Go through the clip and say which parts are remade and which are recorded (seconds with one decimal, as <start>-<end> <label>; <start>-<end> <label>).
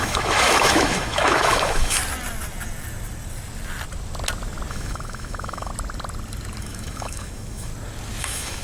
0.0-2.0 remade; 2.0-4.7 recorded; 4.7-5.7 remade; 5.7-6.6 recorded; 6.6-7.7 remade; 7.7-8.2 recorded; 8.2-8.6 remade